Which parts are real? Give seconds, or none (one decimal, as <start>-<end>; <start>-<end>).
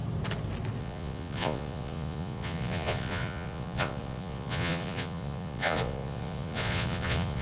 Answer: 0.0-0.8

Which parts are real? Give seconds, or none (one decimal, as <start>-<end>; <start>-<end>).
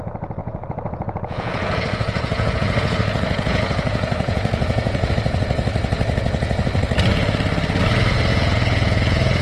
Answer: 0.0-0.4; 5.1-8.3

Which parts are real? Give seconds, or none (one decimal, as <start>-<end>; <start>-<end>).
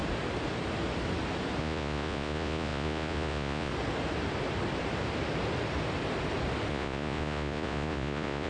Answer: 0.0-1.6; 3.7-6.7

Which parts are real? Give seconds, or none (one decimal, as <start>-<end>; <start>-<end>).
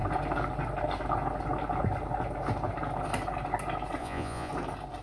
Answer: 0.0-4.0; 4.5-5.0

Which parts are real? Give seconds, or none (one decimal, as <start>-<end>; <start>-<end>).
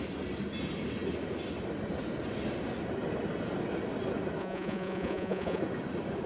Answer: 0.0-4.4; 5.6-6.3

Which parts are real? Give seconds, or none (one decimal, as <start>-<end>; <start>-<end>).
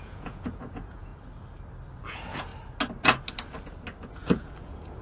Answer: 1.1-2.1; 2.5-4.1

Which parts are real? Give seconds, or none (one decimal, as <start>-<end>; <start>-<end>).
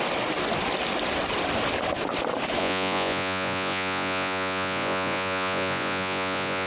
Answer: 0.0-2.6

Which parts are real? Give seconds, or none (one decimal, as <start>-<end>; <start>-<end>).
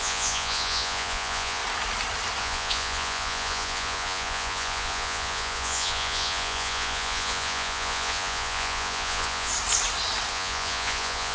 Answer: 1.6-2.4; 9.5-10.3